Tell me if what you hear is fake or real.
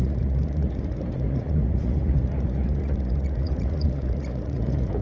fake